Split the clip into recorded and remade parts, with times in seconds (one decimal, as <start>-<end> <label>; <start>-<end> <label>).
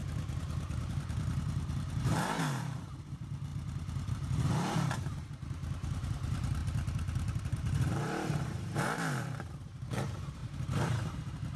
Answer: 0.0-3.5 remade; 3.5-4.1 recorded; 4.1-6.6 remade; 6.6-7.4 recorded; 7.4-10.4 remade; 10.4-11.1 recorded; 11.1-11.6 remade